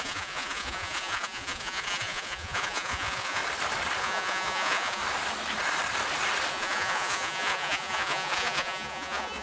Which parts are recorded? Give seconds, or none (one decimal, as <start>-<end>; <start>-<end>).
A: 3.4-4.0; 5.0-6.5